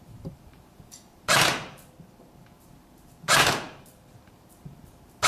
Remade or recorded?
remade